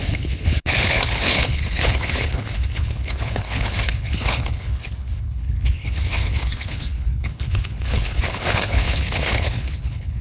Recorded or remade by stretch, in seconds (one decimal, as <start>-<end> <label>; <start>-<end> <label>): 0.0-10.2 remade